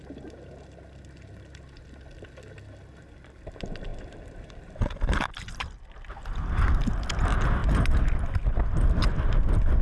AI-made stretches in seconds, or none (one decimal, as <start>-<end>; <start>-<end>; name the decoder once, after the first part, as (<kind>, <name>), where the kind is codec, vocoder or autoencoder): 3.9-6.8 (vocoder, BigVGAN v2)